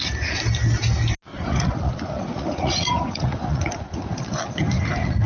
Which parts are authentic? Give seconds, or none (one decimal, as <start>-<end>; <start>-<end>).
0.0-1.3; 4.2-5.3